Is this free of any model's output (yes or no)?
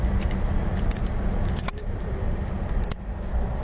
no